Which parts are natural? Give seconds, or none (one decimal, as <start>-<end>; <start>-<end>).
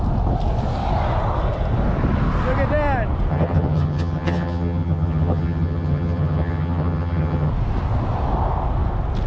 0.0-3.3; 7.5-9.3